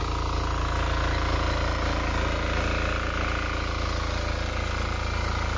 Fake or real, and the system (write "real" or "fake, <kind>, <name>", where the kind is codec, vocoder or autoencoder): real